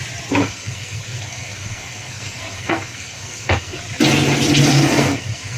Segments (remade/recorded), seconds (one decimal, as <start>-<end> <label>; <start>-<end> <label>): 0.0-0.4 recorded; 0.4-3.8 remade; 3.8-4.7 recorded; 4.7-5.6 remade